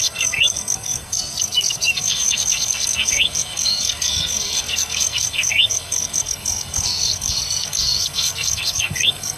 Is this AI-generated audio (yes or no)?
yes